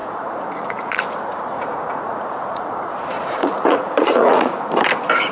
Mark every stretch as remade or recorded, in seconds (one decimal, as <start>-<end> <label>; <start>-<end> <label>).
0.0-1.1 remade; 1.1-1.5 recorded; 1.5-4.7 remade; 4.7-5.3 recorded